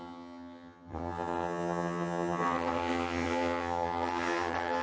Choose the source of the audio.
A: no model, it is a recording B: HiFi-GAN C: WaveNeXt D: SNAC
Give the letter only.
B